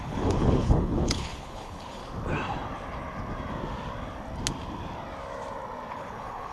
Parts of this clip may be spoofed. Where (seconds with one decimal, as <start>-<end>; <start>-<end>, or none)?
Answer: 0.0-2.0; 5.9-6.5